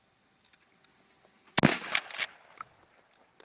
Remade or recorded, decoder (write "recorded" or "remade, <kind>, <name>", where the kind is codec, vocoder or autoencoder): recorded